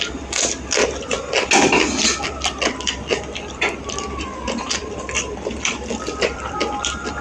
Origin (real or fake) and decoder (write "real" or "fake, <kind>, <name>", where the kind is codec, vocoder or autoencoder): real